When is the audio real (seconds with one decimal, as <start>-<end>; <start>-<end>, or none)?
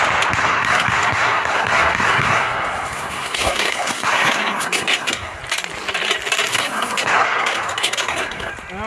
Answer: 0.0-0.4; 5.4-6.5; 8.5-8.9